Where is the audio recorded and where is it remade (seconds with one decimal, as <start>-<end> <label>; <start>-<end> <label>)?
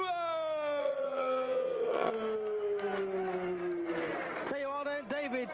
0.0-0.8 recorded; 0.8-2.1 remade; 2.1-5.5 recorded